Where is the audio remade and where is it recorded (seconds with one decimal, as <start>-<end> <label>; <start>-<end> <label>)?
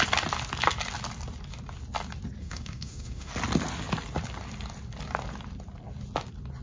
0.0-2.4 recorded; 2.4-3.3 remade; 3.3-6.6 recorded